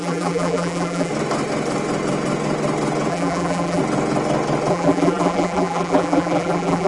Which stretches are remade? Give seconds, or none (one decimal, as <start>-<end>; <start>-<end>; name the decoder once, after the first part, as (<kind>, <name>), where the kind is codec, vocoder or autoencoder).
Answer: 0.0-1.1 (vocoder, BigVGAN v2); 3.1-3.8; 4.7-6.9